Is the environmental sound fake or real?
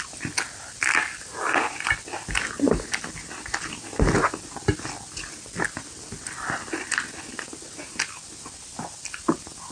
real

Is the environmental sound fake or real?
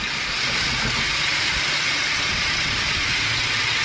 real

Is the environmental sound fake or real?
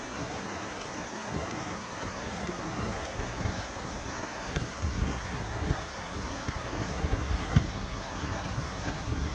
fake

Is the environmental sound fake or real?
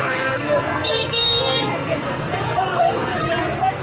fake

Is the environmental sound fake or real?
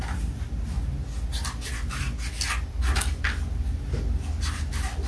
real